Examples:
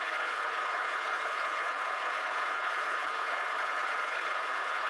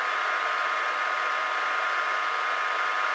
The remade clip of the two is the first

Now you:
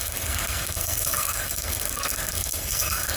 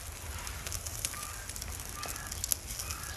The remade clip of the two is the first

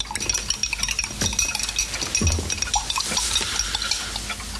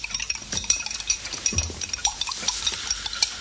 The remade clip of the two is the second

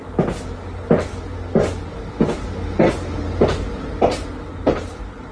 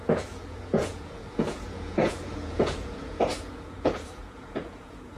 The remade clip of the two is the second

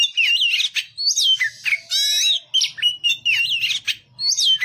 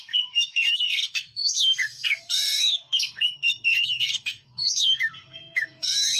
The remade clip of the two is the second